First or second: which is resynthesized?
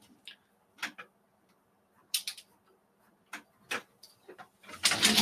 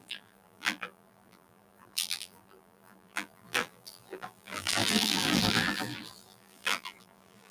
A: second